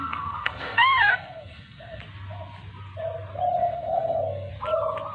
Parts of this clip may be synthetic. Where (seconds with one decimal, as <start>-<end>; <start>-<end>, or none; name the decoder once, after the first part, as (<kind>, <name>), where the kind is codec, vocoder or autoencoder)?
0.0-2.0 (codec, SNAC); 3.6-4.5